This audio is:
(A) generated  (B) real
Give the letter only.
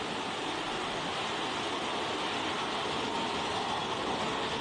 B